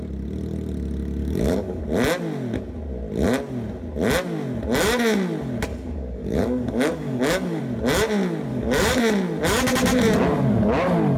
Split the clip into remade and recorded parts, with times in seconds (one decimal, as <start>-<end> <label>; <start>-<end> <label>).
0.0-1.2 recorded; 1.2-1.8 remade; 1.8-5.7 recorded; 5.7-7.6 remade; 7.6-8.5 recorded; 8.5-9.0 remade; 9.0-11.2 recorded